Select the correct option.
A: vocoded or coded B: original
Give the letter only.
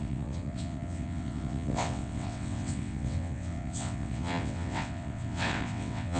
A